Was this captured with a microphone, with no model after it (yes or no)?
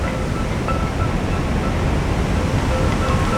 yes